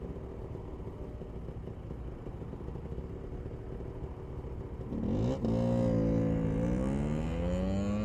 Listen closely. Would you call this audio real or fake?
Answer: real